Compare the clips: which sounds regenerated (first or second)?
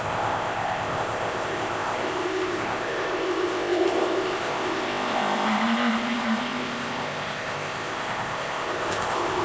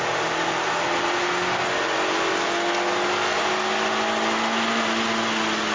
first